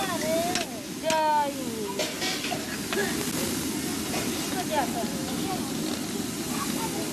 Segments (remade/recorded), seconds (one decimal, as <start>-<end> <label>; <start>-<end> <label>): 0.0-7.1 recorded